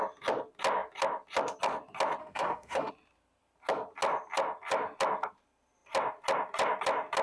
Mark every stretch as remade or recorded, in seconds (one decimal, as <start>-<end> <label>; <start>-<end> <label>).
0.0-2.2 recorded; 2.2-2.9 remade; 2.9-7.2 recorded